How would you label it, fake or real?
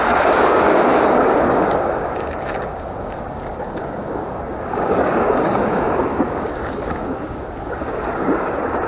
fake